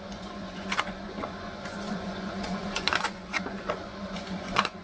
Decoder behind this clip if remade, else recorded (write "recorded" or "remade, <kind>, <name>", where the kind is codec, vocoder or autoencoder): remade, vocoder, Vocos